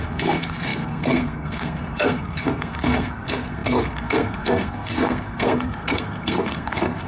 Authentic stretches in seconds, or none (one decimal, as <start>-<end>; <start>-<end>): none